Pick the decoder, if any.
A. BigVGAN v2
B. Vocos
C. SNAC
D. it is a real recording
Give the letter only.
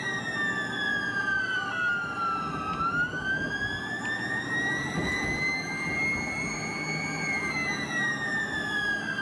D